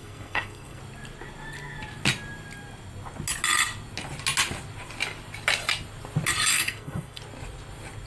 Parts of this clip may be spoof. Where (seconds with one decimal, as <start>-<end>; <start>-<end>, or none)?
0.0-0.8; 6.5-7.2